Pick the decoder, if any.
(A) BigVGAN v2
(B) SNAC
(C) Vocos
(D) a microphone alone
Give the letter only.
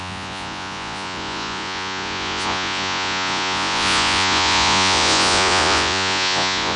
C